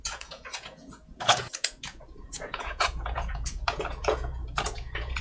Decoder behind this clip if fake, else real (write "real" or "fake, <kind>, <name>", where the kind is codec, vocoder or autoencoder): fake, vocoder, Vocos